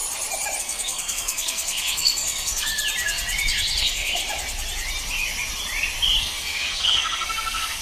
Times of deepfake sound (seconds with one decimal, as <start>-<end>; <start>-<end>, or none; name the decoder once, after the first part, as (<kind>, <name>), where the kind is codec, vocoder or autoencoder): 0.6-2.7 (codec, SNAC); 3.8-4.2; 6.2-7.8